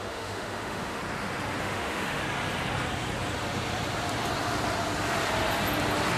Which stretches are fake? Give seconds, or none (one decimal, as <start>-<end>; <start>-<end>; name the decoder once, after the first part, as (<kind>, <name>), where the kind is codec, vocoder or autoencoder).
0.0-1.0 (autoencoder, DAC-VAE); 1.6-2.2